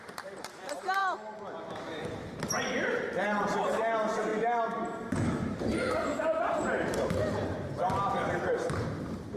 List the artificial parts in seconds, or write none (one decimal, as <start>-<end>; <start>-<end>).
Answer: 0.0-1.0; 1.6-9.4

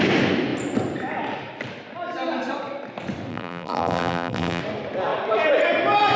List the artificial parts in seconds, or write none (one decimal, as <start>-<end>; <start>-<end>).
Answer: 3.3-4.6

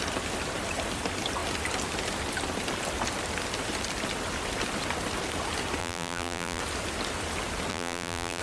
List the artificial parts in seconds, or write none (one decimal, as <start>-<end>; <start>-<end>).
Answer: 5.8-6.6; 7.7-8.4

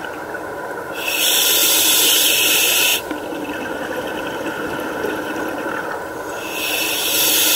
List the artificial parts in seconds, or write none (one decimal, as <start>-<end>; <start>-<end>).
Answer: 2.9-7.6

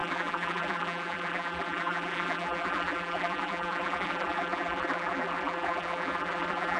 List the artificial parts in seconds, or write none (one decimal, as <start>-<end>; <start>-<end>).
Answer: 0.0-6.8

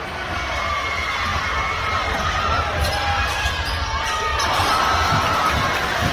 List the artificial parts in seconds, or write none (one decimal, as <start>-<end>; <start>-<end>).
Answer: 1.3-2.8

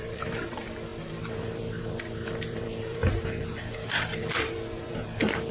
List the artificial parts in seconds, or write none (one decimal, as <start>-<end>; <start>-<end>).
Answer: 0.0-5.5

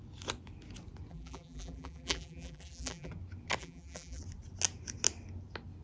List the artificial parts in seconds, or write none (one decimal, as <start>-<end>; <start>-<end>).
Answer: 1.1-3.1; 3.6-4.2